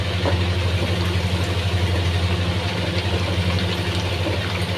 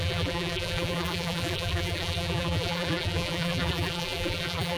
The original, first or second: first